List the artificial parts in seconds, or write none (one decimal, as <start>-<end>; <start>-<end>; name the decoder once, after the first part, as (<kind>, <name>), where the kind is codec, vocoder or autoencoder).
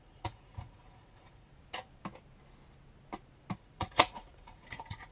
0.0-1.5 (vocoder, Vocos); 3.6-5.1